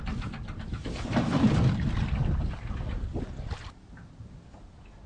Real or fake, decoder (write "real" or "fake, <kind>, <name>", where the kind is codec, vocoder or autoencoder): real